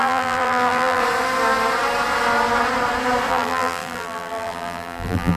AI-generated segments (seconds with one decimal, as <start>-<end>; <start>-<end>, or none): 0.0-1.0; 3.3-5.4